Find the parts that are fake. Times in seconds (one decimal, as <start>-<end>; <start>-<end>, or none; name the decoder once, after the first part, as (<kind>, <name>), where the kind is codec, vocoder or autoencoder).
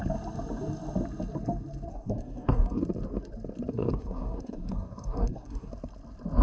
1.9-2.8 (codec, SNAC); 3.7-5.7